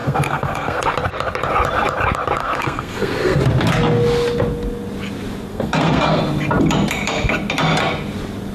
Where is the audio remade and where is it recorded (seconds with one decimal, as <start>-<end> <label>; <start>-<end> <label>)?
0.0-0.8 remade; 0.8-2.4 recorded; 2.4-3.4 remade; 3.4-5.5 recorded; 5.5-6.2 remade; 6.2-8.5 recorded